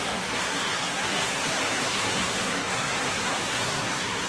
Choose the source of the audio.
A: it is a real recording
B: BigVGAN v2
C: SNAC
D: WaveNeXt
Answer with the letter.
C